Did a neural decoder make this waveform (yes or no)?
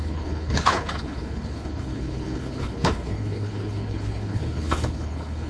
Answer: yes